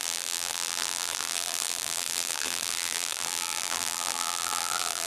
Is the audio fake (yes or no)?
yes